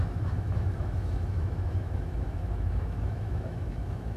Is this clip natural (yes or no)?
no